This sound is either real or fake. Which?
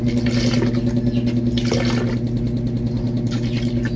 real